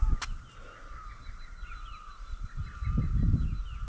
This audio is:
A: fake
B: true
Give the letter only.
B